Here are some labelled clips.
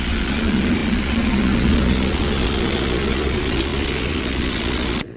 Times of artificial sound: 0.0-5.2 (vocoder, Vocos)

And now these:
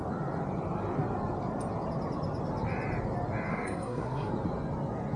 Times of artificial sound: 3.5-4.3 (codec, SNAC)

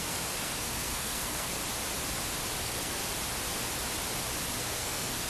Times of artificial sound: 0.0-1.6 (codec, SNAC); 2.6-3.0; 4.6-5.3

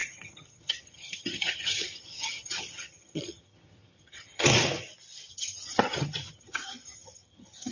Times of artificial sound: 0.0-4.5 (vocoder, HiFi-GAN); 5.3-7.7

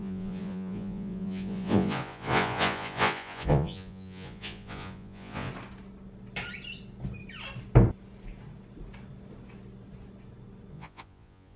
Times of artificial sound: 0.0-5.5 (vocoder, Vocos); 10.7-11.6